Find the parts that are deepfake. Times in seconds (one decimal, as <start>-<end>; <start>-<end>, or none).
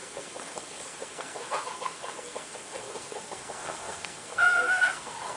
0.0-5.4